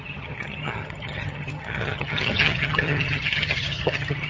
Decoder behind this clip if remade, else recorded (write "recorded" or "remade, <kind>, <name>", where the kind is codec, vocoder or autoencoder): remade, vocoder, HiFi-GAN